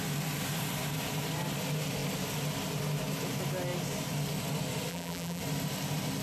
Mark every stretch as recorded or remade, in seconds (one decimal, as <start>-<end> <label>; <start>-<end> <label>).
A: 0.0-4.9 recorded; 4.9-5.4 remade; 5.4-6.2 recorded